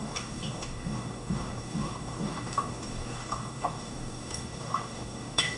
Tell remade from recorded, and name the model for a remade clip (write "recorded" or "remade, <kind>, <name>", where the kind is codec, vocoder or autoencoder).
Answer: remade, codec, DAC